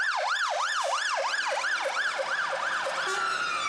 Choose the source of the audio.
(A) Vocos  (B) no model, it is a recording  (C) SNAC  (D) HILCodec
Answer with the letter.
B